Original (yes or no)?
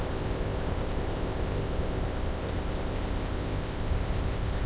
no